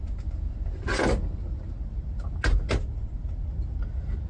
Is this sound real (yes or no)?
yes